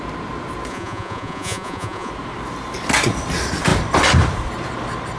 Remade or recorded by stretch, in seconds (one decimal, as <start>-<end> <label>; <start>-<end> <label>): 0.0-0.7 recorded; 0.7-2.1 remade; 2.1-5.2 recorded